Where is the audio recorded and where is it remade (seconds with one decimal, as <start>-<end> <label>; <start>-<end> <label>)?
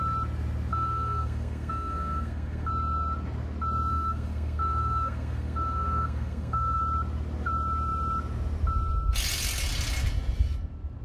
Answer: 0.0-0.7 recorded; 0.7-2.7 remade; 2.7-3.9 recorded; 3.9-6.8 remade; 6.8-11.0 recorded